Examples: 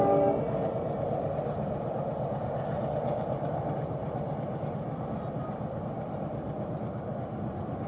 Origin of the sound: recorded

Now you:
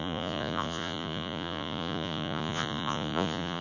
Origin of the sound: remade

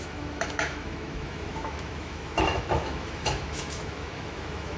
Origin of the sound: remade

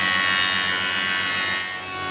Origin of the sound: recorded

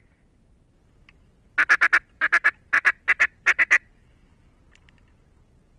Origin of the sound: recorded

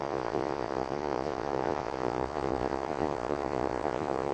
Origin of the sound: remade